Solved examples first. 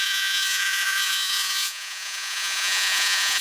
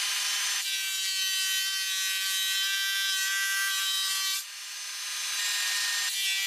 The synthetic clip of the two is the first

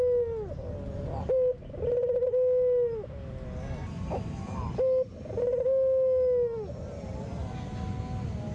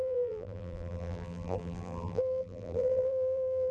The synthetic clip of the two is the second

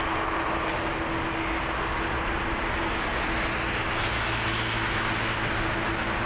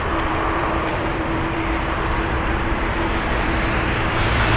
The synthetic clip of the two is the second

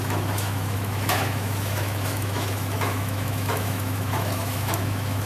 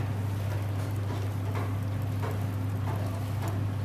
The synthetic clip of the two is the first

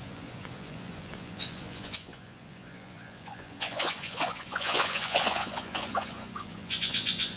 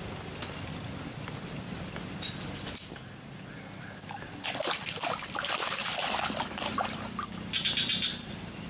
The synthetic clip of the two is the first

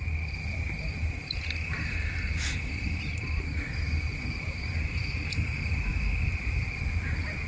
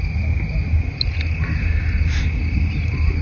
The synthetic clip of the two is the first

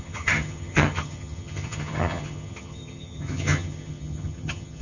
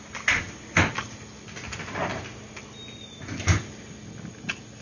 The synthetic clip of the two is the first